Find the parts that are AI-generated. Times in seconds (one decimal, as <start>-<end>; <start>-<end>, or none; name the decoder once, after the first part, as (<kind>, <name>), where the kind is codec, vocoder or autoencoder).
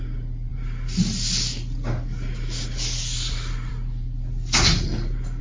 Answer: none